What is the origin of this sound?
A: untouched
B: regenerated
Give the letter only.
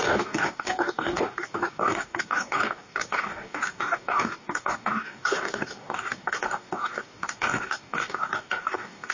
B